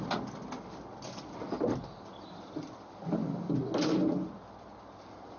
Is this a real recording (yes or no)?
yes